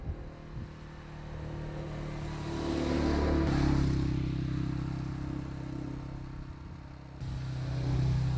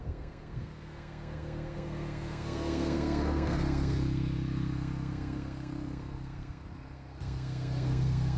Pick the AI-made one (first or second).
second